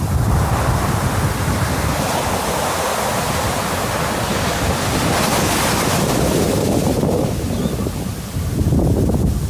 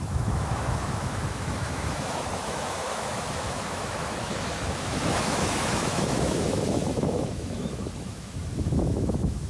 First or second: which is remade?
second